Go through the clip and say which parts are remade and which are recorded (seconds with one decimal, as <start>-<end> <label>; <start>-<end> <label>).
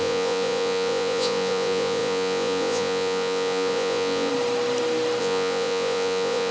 0.0-4.3 remade; 4.3-5.2 recorded; 5.2-6.5 remade